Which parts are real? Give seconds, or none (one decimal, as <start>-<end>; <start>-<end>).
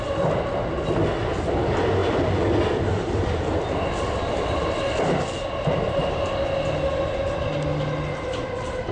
0.0-8.9